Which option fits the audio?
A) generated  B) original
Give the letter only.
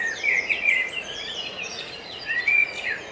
A